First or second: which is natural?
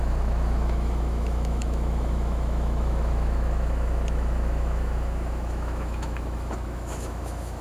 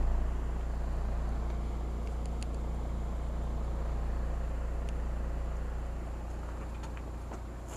second